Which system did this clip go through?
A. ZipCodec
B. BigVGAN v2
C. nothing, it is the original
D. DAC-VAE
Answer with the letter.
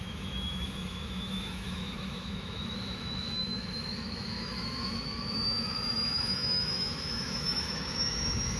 D